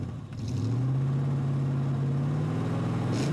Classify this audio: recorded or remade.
recorded